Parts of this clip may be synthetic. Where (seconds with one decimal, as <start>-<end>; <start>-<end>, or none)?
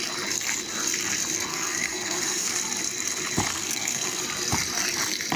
1.5-2.6; 3.5-4.2